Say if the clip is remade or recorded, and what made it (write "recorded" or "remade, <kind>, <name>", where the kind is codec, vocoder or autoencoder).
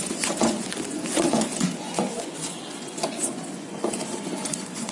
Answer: remade, vocoder, Vocos